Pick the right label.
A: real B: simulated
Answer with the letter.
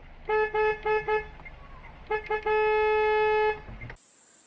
A